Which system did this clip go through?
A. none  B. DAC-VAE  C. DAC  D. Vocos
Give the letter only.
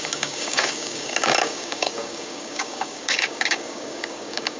C